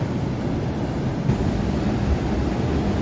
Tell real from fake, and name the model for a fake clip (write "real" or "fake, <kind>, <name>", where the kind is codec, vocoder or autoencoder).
real